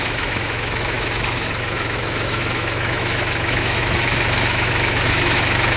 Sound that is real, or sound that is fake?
fake